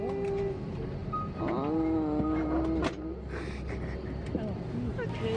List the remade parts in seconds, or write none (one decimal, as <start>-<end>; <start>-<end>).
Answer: none